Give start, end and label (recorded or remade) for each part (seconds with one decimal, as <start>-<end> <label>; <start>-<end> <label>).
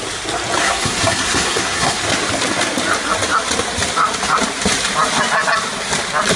0.0-0.6 recorded; 0.6-2.0 remade; 2.0-6.4 recorded